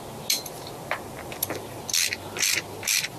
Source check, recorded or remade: recorded